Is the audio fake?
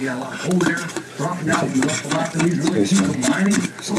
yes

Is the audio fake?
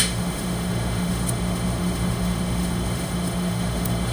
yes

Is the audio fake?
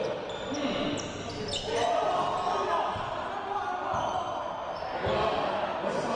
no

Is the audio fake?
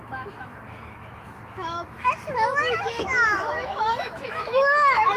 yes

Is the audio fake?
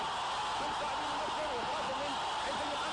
no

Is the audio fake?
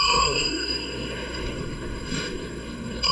yes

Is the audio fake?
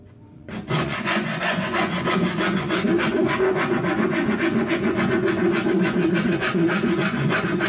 yes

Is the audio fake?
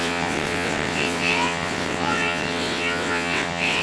yes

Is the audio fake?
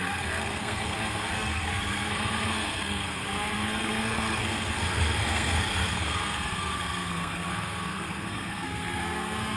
yes